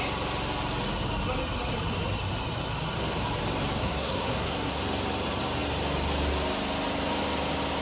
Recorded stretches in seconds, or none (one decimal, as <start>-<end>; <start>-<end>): 0.0-3.8; 4.8-7.8